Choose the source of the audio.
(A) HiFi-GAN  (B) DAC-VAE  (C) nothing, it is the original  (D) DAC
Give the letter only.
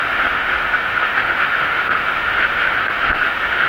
B